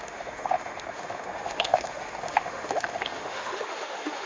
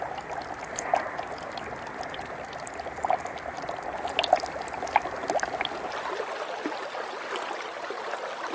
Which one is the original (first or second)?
second